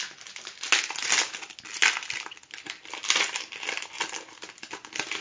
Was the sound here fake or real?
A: real